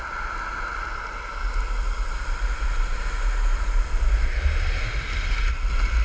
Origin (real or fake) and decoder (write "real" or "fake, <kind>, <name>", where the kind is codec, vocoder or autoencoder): real